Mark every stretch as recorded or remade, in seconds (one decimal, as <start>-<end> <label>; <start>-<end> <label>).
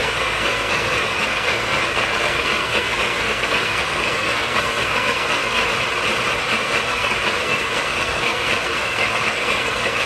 0.0-5.6 remade; 5.6-6.4 recorded; 6.4-10.1 remade